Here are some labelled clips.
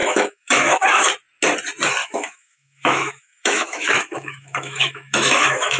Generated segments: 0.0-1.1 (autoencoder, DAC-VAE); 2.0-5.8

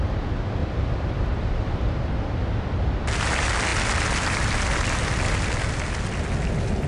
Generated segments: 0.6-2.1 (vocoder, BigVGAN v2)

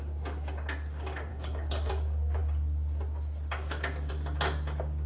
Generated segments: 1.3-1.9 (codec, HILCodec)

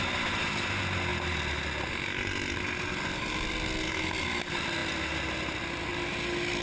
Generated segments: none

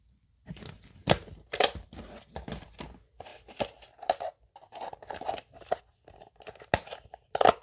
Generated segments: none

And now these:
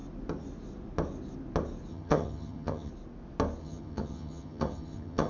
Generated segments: 1.9-2.9 (vocoder, HiFi-GAN); 3.6-5.3

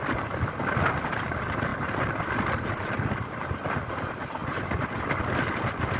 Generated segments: 1.7-2.7 (vocoder, BigVGAN v2); 4.4-5.4